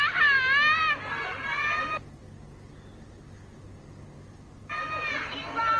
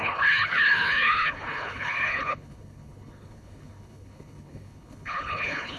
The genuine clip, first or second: first